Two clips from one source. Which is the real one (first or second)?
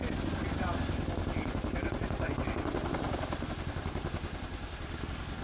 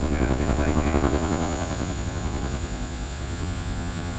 first